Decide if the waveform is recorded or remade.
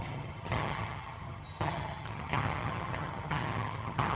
remade